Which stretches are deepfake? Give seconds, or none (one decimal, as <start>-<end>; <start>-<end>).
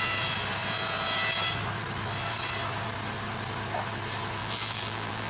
4.4-5.3